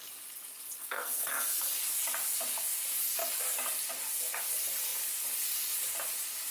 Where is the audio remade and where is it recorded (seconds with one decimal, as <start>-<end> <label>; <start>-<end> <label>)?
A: 0.0-0.8 recorded; 0.8-1.7 remade; 1.7-6.5 recorded